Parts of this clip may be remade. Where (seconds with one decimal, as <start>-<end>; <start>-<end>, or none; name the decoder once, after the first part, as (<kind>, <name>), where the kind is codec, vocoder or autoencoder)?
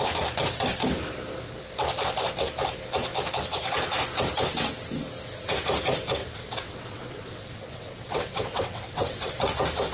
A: 6.2-9.3 (vocoder, WaveNeXt)